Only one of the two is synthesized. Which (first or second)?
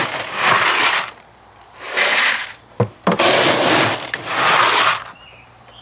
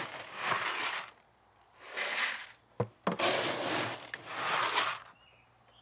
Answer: first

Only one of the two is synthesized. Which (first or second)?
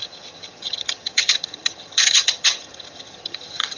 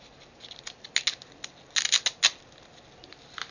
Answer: first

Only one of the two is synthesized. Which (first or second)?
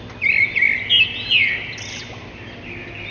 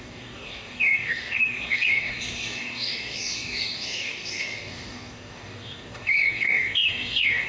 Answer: second